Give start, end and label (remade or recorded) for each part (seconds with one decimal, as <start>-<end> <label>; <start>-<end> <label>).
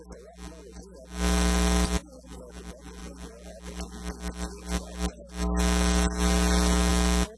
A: 0.0-7.4 recorded